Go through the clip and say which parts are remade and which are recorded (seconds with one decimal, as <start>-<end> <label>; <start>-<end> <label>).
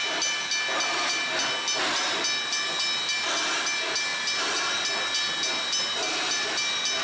0.0-7.0 recorded